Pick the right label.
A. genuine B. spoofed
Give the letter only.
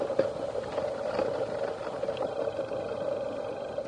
A